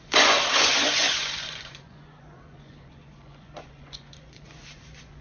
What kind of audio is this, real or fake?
fake